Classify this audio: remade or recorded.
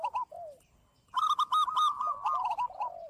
recorded